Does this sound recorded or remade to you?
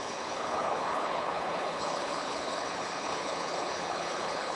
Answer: remade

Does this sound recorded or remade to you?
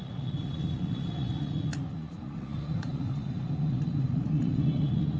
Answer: remade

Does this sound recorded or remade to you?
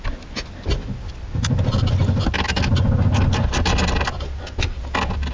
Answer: recorded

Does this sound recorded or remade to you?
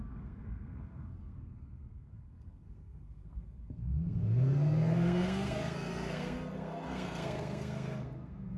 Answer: remade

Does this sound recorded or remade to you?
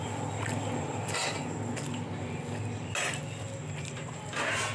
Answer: recorded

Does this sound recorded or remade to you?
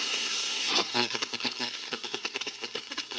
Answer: remade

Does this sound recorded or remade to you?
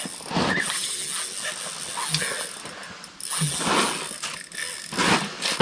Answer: recorded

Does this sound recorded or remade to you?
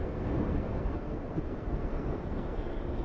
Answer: remade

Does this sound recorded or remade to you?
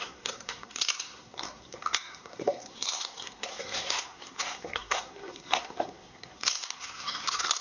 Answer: remade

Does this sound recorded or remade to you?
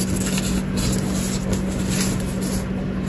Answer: recorded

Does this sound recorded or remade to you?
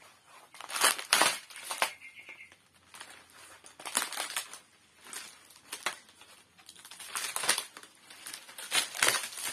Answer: recorded